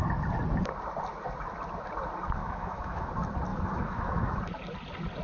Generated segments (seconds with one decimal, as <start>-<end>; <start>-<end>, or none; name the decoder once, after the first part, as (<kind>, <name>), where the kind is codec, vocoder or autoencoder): 2.4-3.1 (autoencoder, DAC-VAE); 3.5-4.4